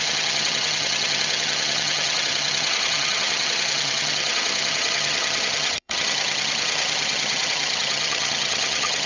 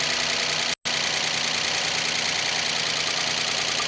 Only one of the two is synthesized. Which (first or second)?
first